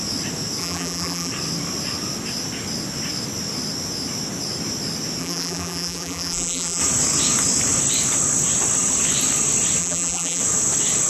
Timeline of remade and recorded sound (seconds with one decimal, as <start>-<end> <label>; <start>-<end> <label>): 0.0-0.6 recorded; 0.6-1.3 remade; 1.3-5.2 recorded; 5.2-6.8 remade; 6.8-9.8 recorded; 9.8-10.4 remade; 10.4-11.1 recorded